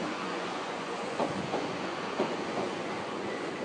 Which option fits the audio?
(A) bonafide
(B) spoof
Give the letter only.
B